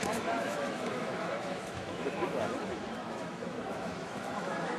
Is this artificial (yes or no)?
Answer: yes